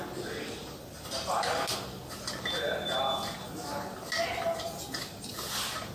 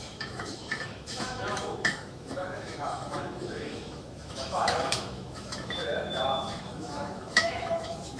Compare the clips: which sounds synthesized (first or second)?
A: second